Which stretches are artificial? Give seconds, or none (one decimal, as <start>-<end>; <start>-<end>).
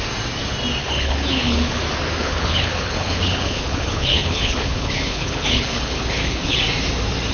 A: 0.8-1.8; 2.2-6.6